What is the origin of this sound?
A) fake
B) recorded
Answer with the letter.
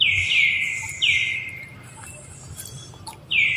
A